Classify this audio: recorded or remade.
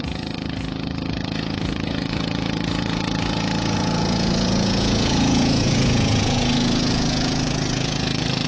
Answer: remade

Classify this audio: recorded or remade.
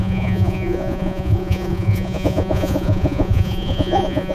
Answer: remade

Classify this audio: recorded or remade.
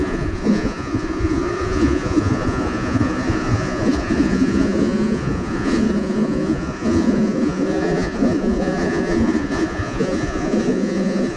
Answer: remade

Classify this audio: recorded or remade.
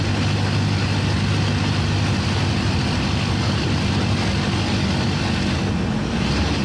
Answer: recorded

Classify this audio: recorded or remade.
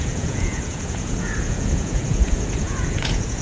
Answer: remade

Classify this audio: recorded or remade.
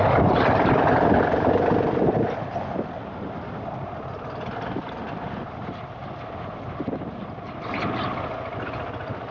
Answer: recorded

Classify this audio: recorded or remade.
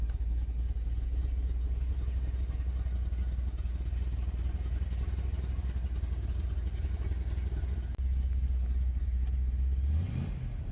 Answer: recorded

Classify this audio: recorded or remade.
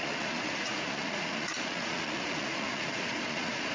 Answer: remade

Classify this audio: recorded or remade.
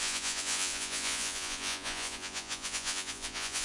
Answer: remade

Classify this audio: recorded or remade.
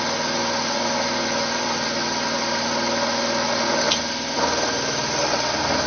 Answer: recorded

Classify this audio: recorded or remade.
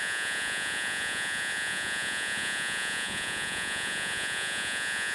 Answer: remade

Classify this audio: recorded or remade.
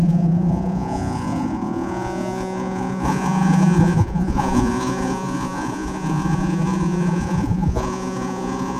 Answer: remade